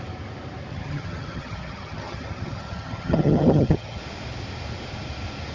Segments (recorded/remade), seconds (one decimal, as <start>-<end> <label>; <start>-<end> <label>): 0.0-0.7 recorded; 0.7-4.0 remade; 4.0-5.5 recorded